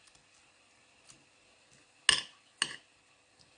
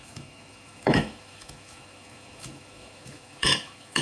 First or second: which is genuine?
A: first